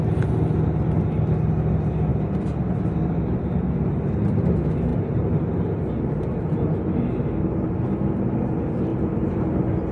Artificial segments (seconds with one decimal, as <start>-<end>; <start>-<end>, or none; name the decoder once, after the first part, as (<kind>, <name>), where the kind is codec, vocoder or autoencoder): 8.9-9.5 (vocoder, BigVGAN v2)